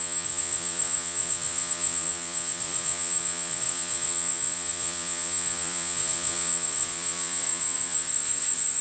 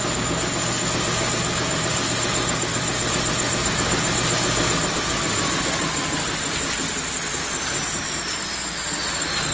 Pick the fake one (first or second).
first